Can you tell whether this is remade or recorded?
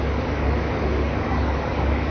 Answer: remade